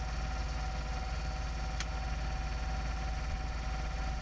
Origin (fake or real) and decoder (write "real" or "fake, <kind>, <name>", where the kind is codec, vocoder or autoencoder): real